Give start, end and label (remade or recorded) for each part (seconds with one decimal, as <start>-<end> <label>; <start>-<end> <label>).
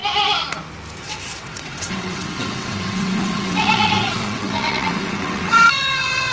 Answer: 0.0-1.0 recorded; 1.0-6.3 remade